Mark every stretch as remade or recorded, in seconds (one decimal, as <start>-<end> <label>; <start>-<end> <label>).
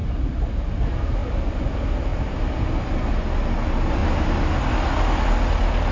0.0-1.2 recorded; 1.2-1.7 remade; 1.7-2.1 recorded; 2.1-2.7 remade; 2.7-5.9 recorded